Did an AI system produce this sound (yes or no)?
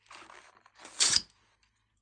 no